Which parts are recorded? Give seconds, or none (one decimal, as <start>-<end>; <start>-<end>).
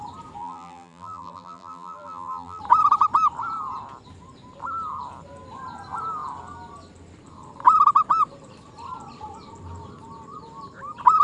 0.0-0.4; 2.6-11.2